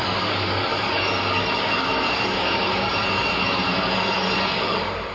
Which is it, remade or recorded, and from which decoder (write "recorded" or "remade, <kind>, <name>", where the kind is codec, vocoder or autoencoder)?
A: remade, codec, DAC